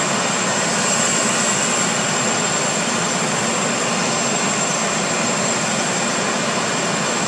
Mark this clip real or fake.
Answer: real